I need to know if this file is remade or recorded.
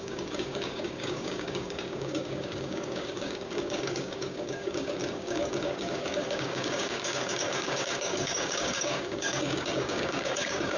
remade